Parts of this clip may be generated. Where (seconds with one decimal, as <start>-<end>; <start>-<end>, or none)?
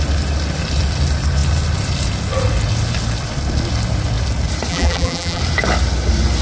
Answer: 4.7-5.4